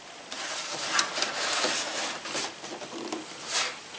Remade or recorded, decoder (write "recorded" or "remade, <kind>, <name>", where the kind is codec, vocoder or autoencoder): recorded